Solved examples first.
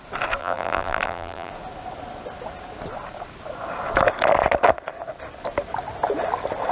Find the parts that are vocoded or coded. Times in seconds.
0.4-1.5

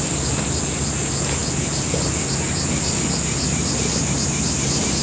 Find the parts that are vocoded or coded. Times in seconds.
none

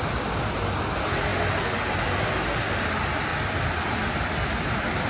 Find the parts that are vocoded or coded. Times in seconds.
3.3-5.1

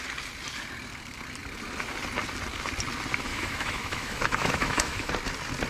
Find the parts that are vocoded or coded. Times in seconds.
3.3-5.1

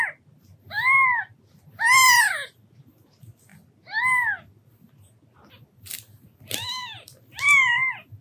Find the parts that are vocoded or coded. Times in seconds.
none

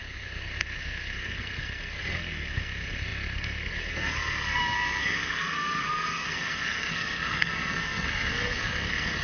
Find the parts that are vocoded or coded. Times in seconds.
0.0-9.2